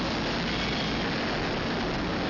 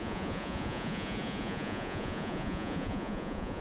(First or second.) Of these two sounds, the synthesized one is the second